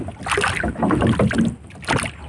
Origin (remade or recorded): recorded